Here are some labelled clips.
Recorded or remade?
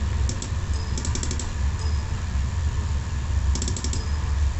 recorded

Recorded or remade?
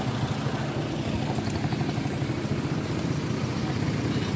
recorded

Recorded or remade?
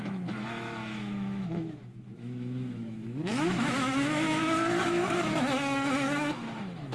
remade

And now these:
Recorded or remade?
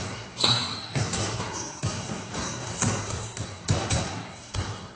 remade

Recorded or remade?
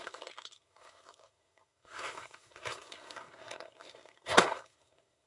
remade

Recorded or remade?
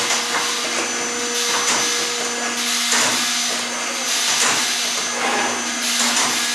recorded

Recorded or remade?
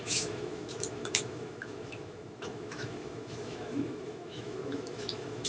remade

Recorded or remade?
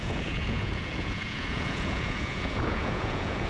remade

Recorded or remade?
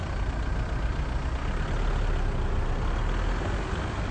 recorded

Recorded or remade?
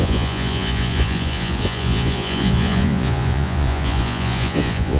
remade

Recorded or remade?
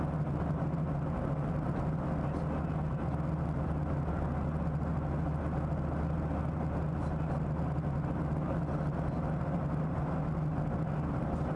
recorded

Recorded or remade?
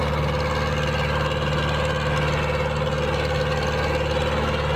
recorded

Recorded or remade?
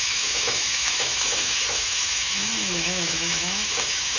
remade